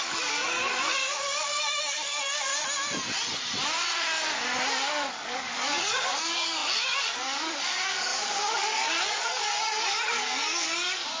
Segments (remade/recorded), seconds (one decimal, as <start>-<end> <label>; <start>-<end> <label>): 0.0-2.5 remade; 2.5-4.7 recorded; 4.7-11.2 remade